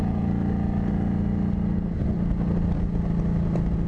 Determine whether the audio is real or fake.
real